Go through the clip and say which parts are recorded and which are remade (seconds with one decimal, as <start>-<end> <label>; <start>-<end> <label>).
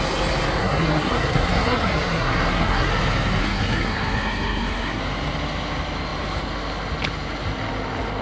0.0-0.6 recorded; 0.6-2.9 remade; 2.9-3.4 recorded; 3.4-5.0 remade; 5.0-8.2 recorded